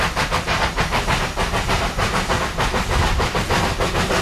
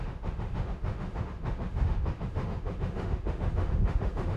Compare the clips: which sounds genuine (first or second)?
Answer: first